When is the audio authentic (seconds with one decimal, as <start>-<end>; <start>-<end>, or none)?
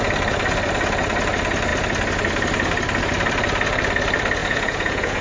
0.0-4.4